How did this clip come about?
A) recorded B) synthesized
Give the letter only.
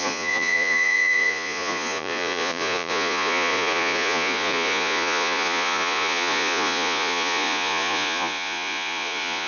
B